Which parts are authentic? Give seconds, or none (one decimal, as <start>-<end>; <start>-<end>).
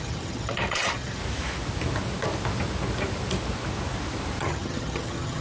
1.2-4.4